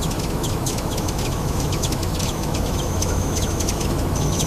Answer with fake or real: fake